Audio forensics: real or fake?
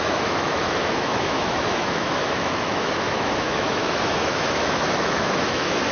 fake